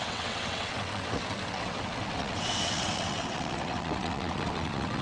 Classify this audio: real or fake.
fake